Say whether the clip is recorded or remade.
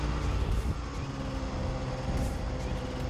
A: recorded